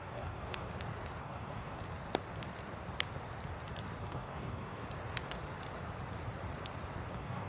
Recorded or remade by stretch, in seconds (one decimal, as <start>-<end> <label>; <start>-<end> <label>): 0.0-0.7 remade; 0.7-1.2 recorded; 1.2-1.8 remade; 1.8-4.0 recorded; 4.0-4.8 remade; 4.8-7.1 recorded; 7.1-7.5 remade